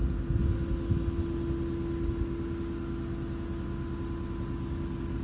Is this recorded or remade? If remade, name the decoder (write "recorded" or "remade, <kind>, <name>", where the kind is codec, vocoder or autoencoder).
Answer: recorded